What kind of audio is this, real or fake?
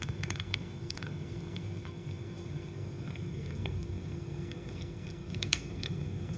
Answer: fake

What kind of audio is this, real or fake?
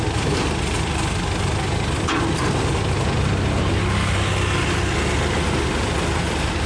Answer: real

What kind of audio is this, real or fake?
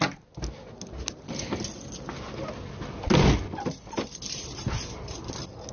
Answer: real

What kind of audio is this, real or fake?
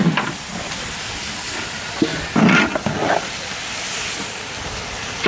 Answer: real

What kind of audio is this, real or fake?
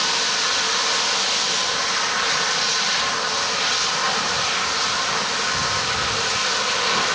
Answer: real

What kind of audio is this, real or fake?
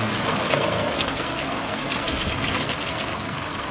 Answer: fake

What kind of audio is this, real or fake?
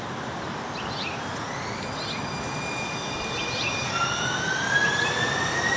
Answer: real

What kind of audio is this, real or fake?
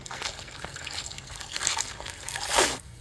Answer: fake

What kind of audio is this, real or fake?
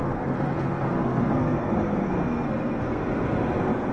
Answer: fake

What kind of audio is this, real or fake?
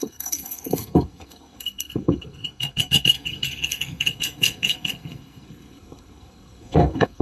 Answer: fake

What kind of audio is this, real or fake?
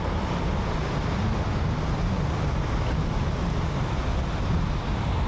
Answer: real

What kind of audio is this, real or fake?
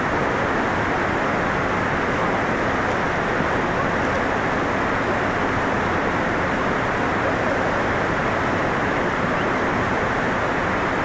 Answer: real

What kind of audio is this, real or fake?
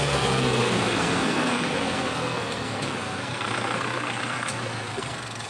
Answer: fake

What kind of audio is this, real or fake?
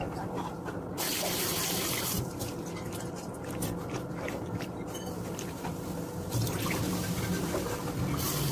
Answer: real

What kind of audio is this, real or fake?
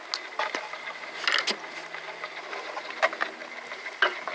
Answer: real